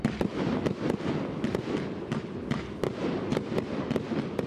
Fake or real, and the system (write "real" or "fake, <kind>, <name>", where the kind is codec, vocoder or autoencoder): real